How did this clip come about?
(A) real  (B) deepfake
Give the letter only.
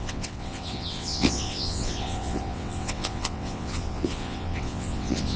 B